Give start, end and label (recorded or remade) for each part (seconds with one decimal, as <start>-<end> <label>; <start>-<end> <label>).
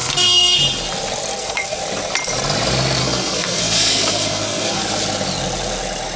0.0-0.6 remade; 0.6-1.3 recorded; 1.3-1.8 remade; 1.8-3.0 recorded; 3.0-4.8 remade; 4.8-6.2 recorded